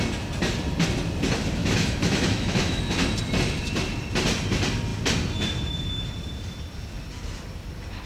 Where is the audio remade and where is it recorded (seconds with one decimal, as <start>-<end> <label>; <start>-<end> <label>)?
0.0-1.6 recorded; 1.6-2.8 remade; 2.8-8.1 recorded